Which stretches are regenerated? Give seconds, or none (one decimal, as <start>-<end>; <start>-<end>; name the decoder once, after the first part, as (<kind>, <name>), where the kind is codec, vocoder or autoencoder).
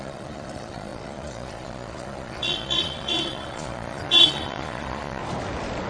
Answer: 0.0-5.2 (vocoder, Vocos)